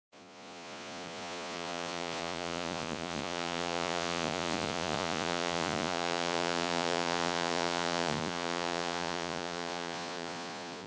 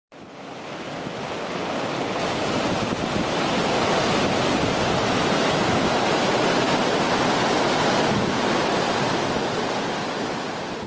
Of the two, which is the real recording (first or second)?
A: second